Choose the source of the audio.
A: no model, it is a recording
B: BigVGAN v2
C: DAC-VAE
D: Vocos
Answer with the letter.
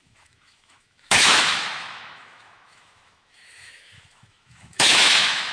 C